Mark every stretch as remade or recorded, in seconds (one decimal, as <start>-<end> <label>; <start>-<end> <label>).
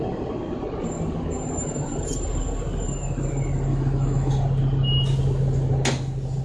0.0-3.7 recorded; 3.7-4.3 remade; 4.3-6.4 recorded